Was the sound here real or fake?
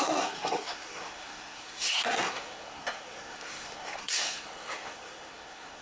fake